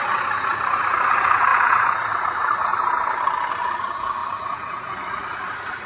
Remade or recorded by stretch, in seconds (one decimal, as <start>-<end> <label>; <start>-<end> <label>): 0.0-2.7 remade; 2.7-3.5 recorded; 3.5-5.9 remade